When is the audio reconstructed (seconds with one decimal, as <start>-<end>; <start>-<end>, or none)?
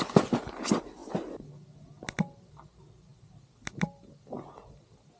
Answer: none